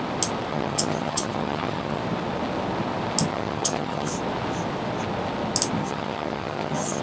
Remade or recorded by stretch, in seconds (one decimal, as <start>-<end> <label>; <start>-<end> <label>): 0.0-0.5 recorded; 0.5-2.0 remade; 2.0-3.3 recorded; 3.3-4.1 remade; 4.1-5.8 recorded; 5.8-7.0 remade